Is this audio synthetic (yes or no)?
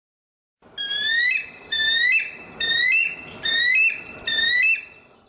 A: no